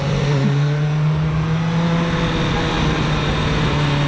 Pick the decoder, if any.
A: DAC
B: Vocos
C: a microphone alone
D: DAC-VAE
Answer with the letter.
C